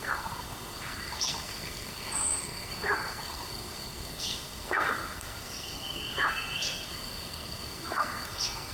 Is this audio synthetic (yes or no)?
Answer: yes